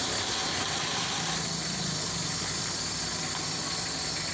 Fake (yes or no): no